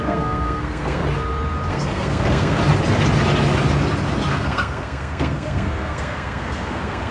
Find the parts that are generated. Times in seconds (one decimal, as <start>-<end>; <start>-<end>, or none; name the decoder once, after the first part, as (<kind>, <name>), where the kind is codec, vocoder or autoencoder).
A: 0.0-1.0 (codec, SNAC); 1.7-2.6; 4.3-7.1